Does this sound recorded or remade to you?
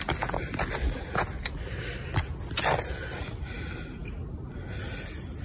recorded